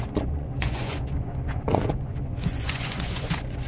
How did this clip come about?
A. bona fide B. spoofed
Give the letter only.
B